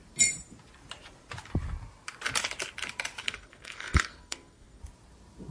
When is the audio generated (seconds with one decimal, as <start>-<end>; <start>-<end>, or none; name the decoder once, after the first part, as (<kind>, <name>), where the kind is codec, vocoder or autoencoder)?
3.2-4.8 (codec, SNAC)